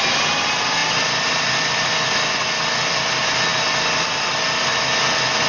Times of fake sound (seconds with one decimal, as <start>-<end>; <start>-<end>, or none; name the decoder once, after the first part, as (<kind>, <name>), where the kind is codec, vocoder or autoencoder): none